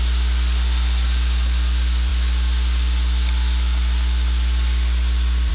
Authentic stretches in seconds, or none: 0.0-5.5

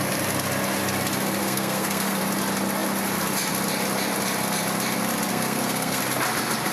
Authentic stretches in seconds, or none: 0.0-1.4; 2.2-5.3; 6.0-6.7

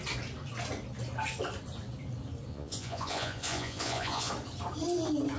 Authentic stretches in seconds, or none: 0.0-2.5; 4.3-5.4